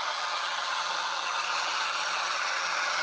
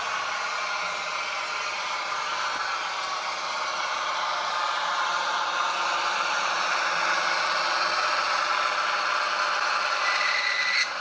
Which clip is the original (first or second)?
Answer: second